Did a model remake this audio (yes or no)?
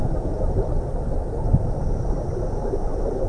no